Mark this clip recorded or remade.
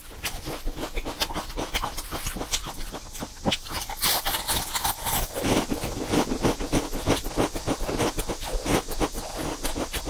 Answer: recorded